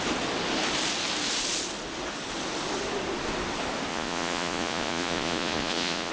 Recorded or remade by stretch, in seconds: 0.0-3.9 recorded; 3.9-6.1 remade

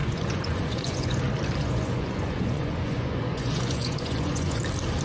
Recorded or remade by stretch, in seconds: 0.0-1.2 remade; 1.2-1.6 recorded; 1.6-4.6 remade; 4.6-5.0 recorded